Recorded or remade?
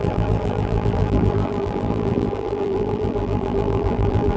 remade